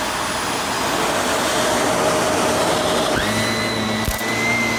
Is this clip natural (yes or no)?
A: yes